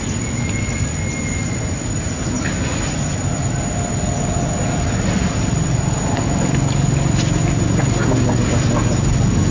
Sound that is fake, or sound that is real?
real